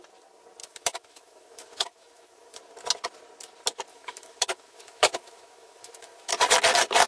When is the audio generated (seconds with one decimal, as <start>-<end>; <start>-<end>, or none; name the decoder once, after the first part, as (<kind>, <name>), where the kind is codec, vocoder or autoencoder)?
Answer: 0.6-2.6 (autoencoder, DAC-VAE); 3.9-6.3